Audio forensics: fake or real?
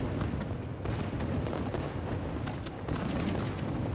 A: real